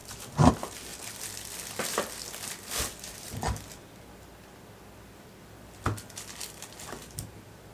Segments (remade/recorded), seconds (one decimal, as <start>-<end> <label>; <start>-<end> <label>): 0.0-7.0 recorded; 7.0-7.7 remade